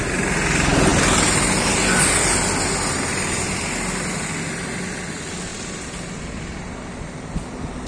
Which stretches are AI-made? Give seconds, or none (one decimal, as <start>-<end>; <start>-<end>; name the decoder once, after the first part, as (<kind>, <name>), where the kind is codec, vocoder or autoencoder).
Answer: 5.5-6.2 (vocoder, BigVGAN v2)